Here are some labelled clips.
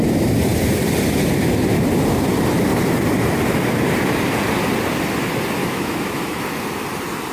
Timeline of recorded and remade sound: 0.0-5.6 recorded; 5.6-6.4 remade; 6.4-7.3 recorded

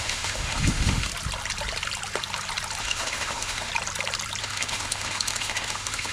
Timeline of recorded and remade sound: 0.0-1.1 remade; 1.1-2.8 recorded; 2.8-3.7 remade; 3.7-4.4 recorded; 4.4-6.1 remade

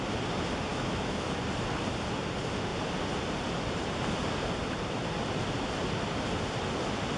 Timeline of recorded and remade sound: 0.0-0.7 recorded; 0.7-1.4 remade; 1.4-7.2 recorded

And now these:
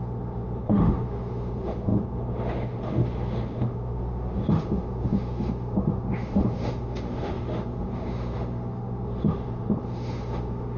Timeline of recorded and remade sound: 0.0-10.8 remade

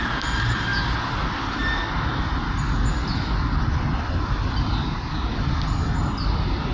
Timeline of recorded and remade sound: 0.0-6.7 recorded